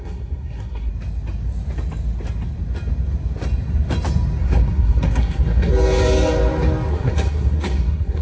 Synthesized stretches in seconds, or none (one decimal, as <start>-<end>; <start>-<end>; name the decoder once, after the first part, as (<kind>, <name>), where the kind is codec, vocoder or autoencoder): 0.0-0.9 (codec, SNAC); 4.4-5.7; 6.9-8.2